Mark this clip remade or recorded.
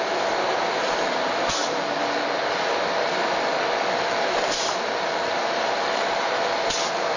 remade